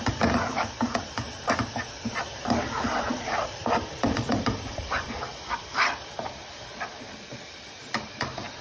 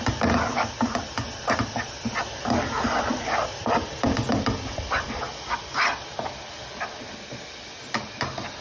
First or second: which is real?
second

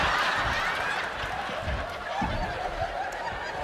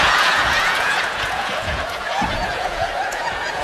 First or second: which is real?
first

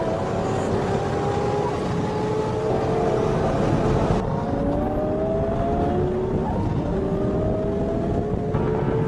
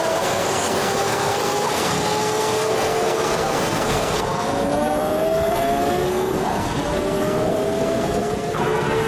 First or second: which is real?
first